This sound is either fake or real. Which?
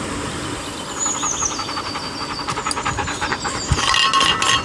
real